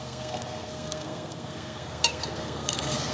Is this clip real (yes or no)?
no